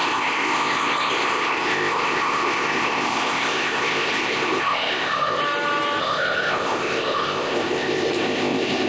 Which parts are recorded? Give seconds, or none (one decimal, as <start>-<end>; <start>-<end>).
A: 5.4-6.0